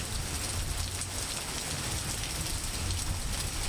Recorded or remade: recorded